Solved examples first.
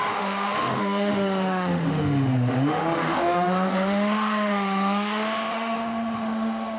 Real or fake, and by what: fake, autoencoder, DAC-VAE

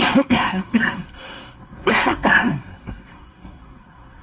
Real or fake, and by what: fake, codec, SNAC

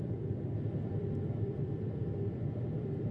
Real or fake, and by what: real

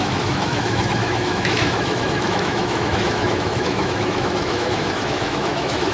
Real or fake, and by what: fake, autoencoder, DAC-VAE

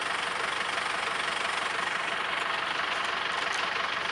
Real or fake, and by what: real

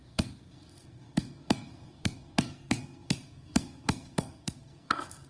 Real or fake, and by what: fake, codec, SNAC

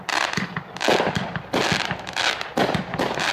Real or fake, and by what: real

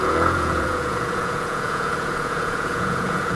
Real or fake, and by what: fake, vocoder, Vocos